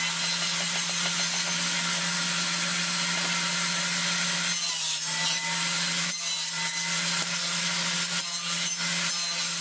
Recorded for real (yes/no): yes